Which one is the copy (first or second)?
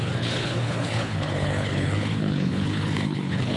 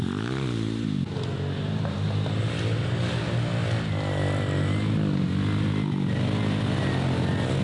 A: first